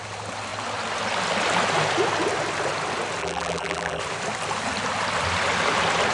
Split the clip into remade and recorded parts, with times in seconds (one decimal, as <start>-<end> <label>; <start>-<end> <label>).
0.0-3.2 recorded; 3.2-4.0 remade; 4.0-6.1 recorded